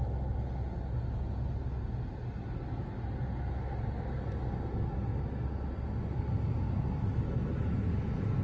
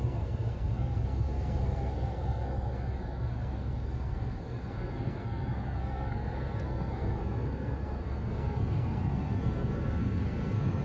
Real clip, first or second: first